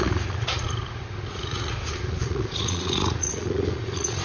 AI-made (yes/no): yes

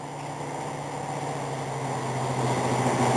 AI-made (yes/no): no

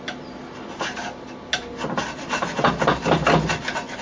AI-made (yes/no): no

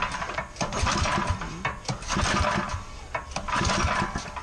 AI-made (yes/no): no